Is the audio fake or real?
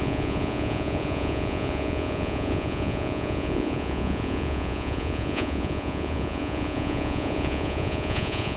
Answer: fake